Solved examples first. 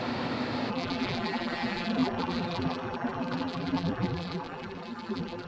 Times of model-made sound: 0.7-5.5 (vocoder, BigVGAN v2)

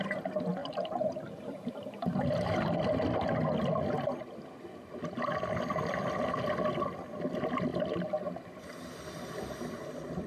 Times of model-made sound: 0.6-1.7 (vocoder, BigVGAN v2)

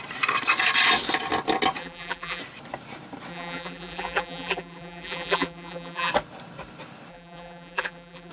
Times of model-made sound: 1.8-2.4 (vocoder, BigVGAN v2); 3.3-6.1; 7.1-8.3

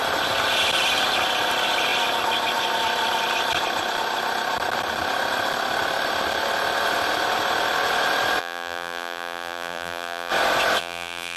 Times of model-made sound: 8.4-10.3 (vocoder, BigVGAN v2); 10.8-11.4

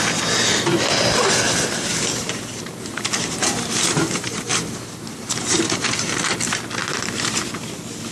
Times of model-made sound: 1.9-6.3 (vocoder, BigVGAN v2); 6.8-7.5